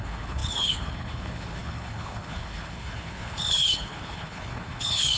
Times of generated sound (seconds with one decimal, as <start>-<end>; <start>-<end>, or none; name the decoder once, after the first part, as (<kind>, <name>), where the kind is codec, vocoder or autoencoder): 0.0-5.2 (codec, HILCodec)

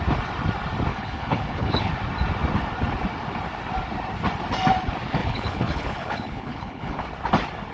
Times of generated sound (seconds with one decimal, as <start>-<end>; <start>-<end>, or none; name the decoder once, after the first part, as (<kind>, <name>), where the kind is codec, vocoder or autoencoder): 0.9-1.9 (codec, HILCodec); 5.2-7.0